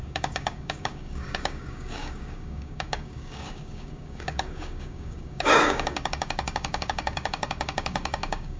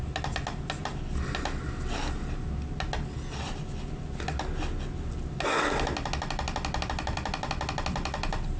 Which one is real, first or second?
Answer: second